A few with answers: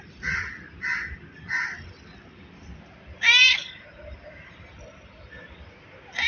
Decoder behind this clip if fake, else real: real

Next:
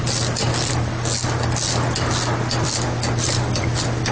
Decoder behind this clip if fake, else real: real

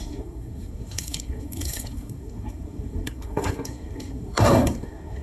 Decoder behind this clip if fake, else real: fake, codec, SNAC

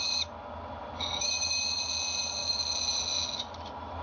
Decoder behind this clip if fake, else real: real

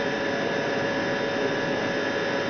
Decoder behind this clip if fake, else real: real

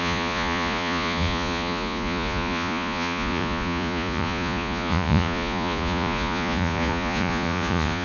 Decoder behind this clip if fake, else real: fake, vocoder, Vocos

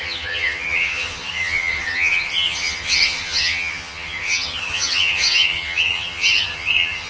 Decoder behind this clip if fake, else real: fake, vocoder, HiFi-GAN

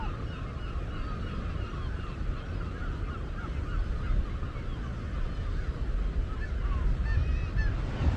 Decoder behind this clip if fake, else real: real